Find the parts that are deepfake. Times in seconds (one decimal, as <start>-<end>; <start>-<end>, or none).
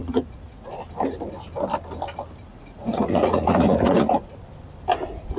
0.0-0.7; 2.5-4.3